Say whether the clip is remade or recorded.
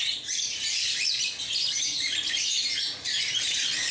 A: remade